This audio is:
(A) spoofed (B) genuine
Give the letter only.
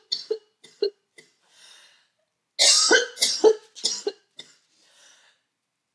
B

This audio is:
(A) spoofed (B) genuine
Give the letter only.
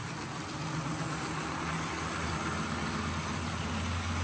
B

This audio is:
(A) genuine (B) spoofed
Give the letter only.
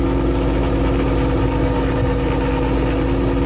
A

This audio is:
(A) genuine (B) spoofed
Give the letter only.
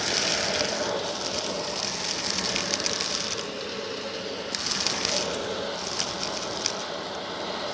A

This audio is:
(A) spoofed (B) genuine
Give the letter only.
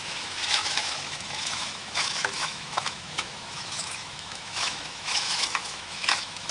A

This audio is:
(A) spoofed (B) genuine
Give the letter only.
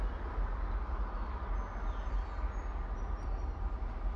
B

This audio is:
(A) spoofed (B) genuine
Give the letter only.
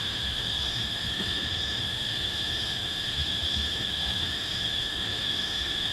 A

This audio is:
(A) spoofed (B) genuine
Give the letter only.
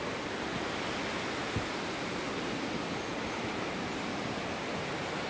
B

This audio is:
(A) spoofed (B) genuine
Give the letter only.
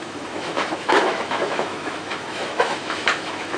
A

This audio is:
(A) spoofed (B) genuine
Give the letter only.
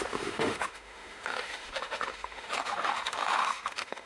A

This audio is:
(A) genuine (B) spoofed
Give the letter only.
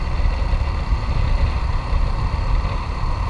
A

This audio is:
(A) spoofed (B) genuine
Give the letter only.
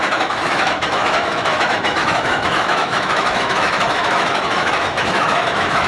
A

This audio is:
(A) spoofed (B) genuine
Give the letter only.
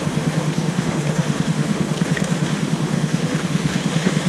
A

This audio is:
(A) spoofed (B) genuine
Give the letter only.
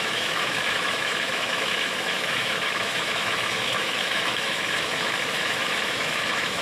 A